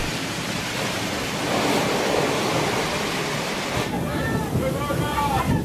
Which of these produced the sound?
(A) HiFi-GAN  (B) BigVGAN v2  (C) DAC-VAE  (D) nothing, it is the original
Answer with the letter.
B